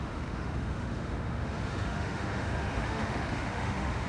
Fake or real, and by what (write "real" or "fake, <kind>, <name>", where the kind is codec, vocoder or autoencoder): fake, autoencoder, DAC-VAE